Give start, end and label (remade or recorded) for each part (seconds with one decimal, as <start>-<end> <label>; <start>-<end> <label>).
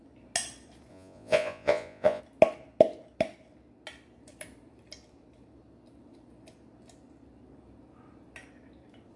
0.0-0.9 recorded; 0.9-2.2 remade; 2.2-9.2 recorded